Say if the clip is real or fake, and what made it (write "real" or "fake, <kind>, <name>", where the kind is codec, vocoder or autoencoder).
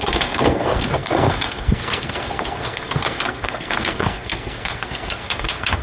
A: fake, codec, SNAC